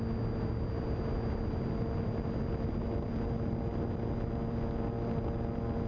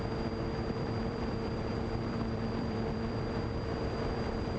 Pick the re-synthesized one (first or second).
second